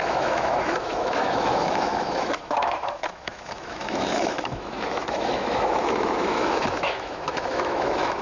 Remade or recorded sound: remade